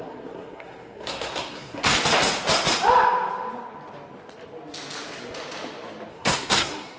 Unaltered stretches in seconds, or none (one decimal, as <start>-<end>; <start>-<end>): 1.9-6.1